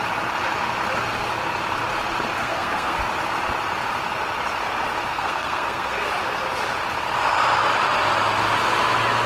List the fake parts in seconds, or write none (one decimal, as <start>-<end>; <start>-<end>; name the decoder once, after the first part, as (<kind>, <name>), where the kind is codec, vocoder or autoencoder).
2.4-3.0 (codec, SNAC); 5.1-6.1